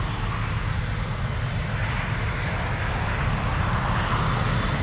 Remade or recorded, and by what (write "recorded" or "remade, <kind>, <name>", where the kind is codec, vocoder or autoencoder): recorded